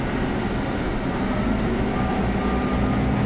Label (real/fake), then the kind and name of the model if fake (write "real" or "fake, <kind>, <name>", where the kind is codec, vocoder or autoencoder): real